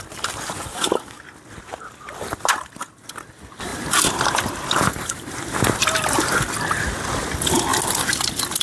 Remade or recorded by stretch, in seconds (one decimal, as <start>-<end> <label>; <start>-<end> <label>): 0.0-0.7 recorded; 0.7-1.2 remade; 1.2-8.6 recorded